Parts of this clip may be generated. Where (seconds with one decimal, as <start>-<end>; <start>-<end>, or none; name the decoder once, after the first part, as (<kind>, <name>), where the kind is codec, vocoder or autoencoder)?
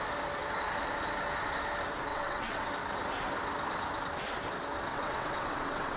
2.1-2.7 (vocoder, WaveNeXt); 4.9-6.0